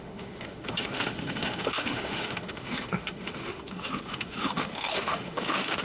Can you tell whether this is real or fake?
fake